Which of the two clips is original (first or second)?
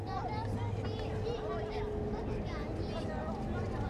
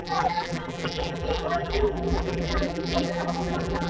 first